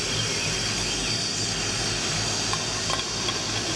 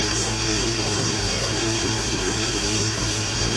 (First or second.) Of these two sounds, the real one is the first